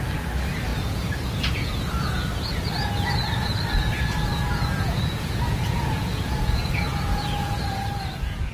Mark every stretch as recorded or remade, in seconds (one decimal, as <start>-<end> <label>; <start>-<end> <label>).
0.0-0.7 recorded; 0.7-2.2 remade; 2.2-3.8 recorded; 3.8-8.5 remade